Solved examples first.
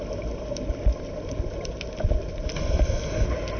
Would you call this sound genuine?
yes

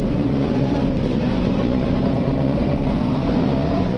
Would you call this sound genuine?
no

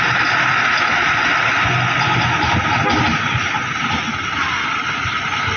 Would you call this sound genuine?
yes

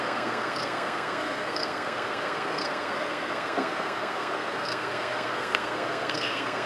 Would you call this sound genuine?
no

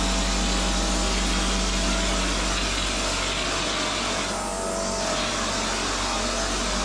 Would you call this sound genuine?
yes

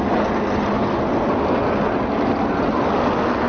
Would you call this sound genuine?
yes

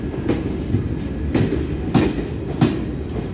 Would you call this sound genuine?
yes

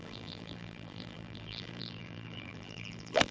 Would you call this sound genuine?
no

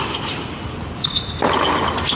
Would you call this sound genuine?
yes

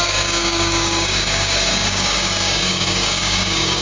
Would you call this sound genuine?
no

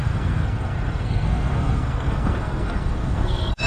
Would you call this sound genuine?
no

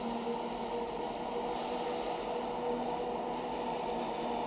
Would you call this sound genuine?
yes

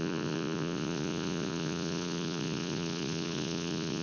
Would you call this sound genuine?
no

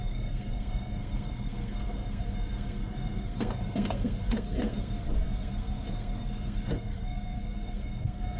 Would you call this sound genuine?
no